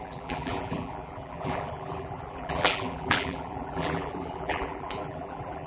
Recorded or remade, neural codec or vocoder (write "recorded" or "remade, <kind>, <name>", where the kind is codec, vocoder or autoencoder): remade, vocoder, BigVGAN v2